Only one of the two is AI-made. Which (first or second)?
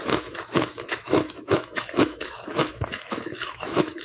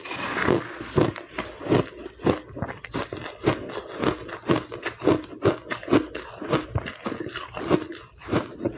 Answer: first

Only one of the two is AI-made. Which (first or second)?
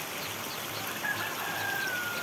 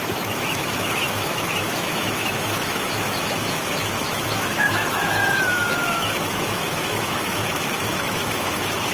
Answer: second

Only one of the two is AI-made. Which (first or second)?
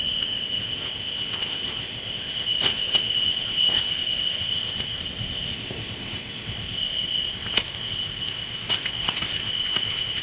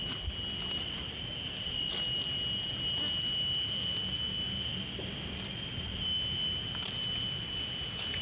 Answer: first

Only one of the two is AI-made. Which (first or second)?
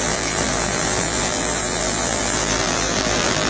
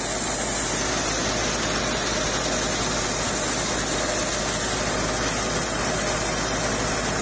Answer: first